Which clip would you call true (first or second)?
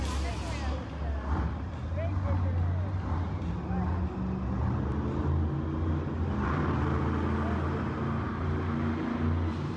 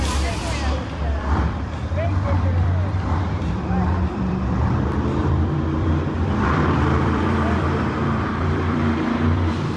first